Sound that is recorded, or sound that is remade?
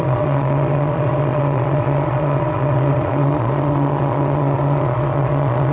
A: remade